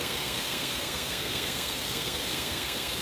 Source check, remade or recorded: remade